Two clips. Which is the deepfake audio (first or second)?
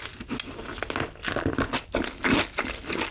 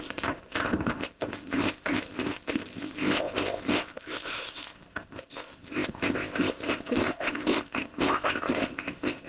second